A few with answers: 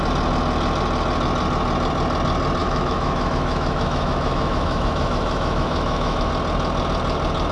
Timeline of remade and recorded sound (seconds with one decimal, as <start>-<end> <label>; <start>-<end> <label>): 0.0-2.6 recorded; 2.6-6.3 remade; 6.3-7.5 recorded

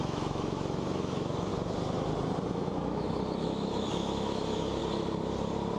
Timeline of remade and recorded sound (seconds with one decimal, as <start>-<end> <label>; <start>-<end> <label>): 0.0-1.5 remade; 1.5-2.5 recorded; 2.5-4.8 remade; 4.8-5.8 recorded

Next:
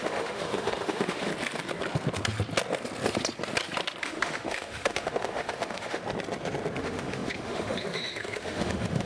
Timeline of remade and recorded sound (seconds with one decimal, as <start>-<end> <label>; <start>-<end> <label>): 0.0-1.3 remade; 1.3-4.0 recorded; 4.0-6.0 remade; 6.0-6.8 recorded; 6.8-9.1 remade

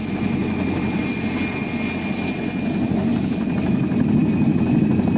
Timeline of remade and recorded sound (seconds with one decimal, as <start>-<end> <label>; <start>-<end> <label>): 0.0-5.2 recorded